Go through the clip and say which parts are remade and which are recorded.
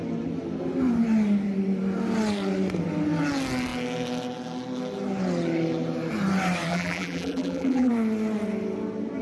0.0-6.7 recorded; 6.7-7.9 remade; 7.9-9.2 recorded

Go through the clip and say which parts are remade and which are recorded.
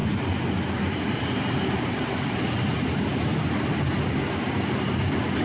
0.0-5.4 recorded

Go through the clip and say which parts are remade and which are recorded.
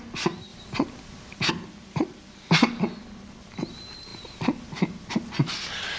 0.0-6.0 recorded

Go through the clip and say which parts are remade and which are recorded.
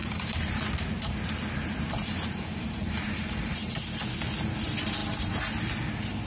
0.0-0.6 remade; 0.6-2.0 recorded; 2.0-4.0 remade; 4.0-6.3 recorded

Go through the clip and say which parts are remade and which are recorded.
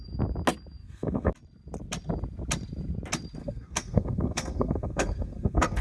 0.0-0.8 recorded; 0.8-1.3 remade; 1.3-3.4 recorded; 3.4-5.8 remade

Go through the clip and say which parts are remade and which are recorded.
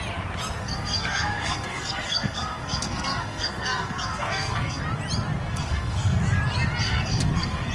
0.0-0.6 recorded; 0.6-4.8 remade; 4.8-5.5 recorded; 5.5-6.2 remade; 6.2-6.8 recorded; 6.8-7.7 remade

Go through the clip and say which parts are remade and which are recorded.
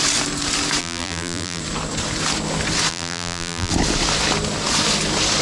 0.0-0.8 recorded; 0.8-1.6 remade; 1.6-2.9 recorded; 2.9-3.7 remade; 3.7-5.4 recorded